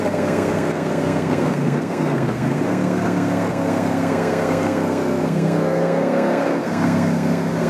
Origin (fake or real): fake